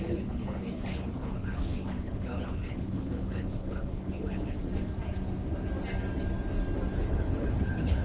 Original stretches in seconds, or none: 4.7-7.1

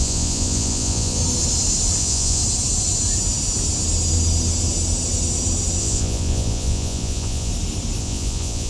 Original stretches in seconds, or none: 1.2-2.0; 2.4-5.8; 7.5-8.0

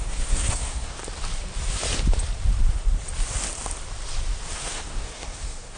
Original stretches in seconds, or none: 1.0-4.5